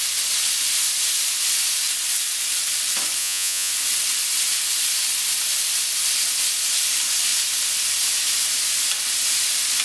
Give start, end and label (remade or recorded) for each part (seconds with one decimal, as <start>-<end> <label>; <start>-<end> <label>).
0.0-3.2 recorded; 3.2-3.7 remade; 3.7-9.8 recorded